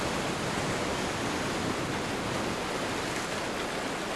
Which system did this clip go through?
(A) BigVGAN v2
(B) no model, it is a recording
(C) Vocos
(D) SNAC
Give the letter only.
B